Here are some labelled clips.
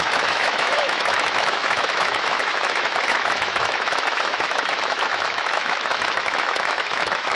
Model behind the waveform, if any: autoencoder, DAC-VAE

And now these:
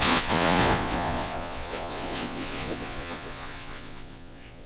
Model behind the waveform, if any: vocoder, Vocos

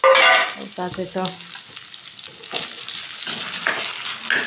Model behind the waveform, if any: none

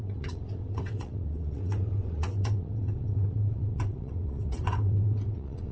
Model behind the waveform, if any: vocoder, WaveNeXt